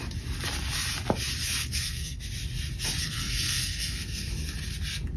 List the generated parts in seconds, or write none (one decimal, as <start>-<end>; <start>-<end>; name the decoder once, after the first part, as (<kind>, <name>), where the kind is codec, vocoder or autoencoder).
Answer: 1.6-2.2 (codec, SNAC); 3.0-4.3